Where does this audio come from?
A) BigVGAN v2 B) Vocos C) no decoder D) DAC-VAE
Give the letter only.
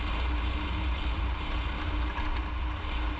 C